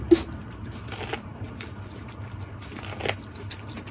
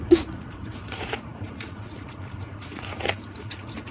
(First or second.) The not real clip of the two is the second